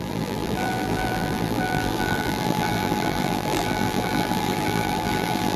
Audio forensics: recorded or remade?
remade